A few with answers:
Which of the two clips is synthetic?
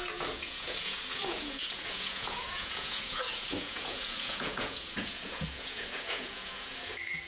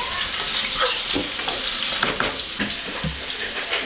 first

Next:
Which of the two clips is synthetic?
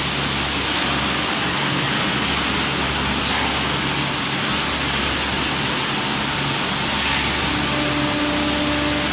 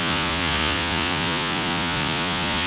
second